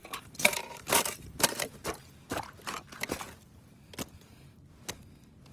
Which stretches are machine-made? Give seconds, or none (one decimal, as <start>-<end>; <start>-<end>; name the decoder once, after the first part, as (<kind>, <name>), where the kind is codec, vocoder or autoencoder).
0.0-1.3 (vocoder, BigVGAN v2)

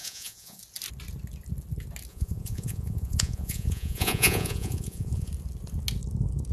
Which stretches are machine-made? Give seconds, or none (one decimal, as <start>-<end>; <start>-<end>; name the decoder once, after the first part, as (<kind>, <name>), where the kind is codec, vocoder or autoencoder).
0.0-0.6 (vocoder, Vocos); 2.1-5.3